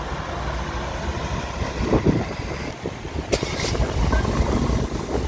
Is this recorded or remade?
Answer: recorded